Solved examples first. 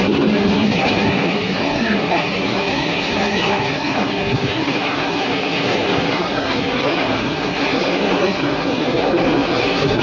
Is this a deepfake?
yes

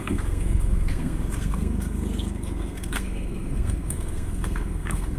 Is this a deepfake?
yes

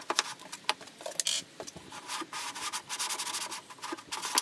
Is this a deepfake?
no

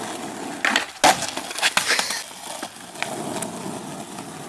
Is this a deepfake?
no